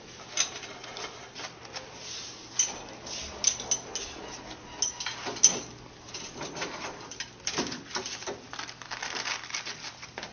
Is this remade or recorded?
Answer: recorded